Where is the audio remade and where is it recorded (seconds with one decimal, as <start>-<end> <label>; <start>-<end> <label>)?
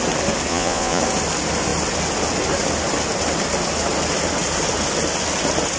0.0-0.5 recorded; 0.5-1.0 remade; 1.0-5.8 recorded